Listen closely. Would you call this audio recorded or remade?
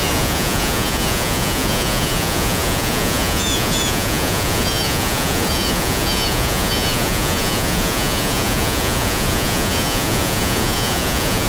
remade